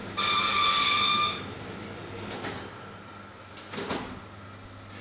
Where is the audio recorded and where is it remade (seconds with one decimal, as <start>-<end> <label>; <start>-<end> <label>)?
0.0-5.0 recorded